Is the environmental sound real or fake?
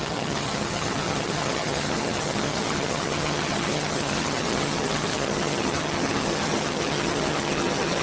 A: fake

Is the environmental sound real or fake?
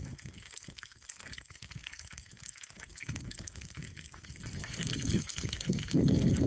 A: fake